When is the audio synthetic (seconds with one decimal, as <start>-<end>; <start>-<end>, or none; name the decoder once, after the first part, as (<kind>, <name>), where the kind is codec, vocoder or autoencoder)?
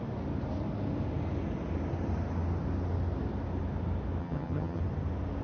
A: 4.2-4.8 (vocoder, HiFi-GAN)